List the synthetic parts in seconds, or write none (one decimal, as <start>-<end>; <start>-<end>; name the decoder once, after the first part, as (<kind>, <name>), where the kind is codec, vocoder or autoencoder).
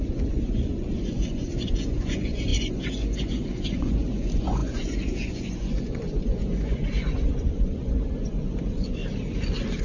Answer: 0.0-9.0 (vocoder, Vocos)